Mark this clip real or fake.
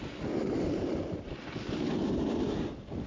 real